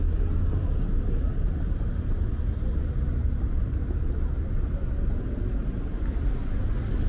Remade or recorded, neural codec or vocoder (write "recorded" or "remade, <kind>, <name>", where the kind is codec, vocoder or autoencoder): recorded